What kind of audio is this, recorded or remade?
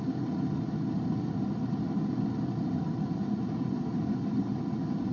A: recorded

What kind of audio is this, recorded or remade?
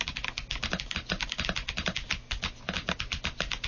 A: recorded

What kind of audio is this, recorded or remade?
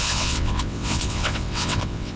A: remade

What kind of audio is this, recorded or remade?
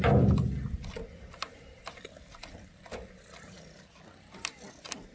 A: recorded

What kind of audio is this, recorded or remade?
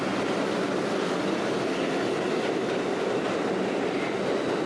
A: recorded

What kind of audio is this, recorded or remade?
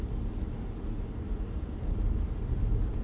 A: recorded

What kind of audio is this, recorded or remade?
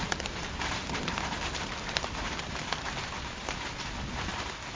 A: recorded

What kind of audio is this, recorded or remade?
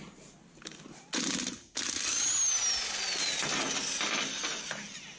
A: recorded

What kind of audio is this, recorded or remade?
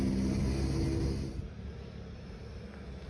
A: recorded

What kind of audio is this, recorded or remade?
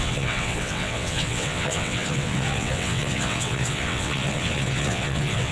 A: remade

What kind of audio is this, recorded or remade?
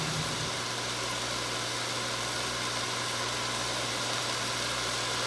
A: recorded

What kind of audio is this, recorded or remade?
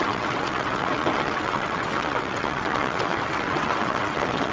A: remade